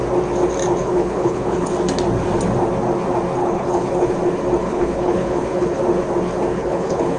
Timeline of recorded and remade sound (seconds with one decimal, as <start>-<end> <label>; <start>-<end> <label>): 0.0-0.8 recorded; 0.8-1.7 remade; 1.7-3.4 recorded; 3.4-4.1 remade; 4.1-4.6 recorded; 4.6-5.8 remade; 5.8-6.5 recorded; 6.5-7.2 remade